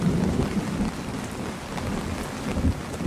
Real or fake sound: fake